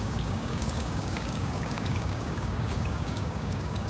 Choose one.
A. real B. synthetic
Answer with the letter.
B